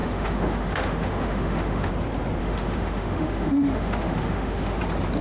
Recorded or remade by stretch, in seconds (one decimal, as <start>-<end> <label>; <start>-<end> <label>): 0.0-1.9 remade; 1.9-2.4 recorded; 2.4-4.8 remade; 4.8-5.2 recorded